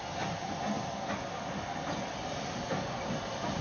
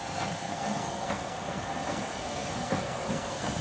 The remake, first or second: second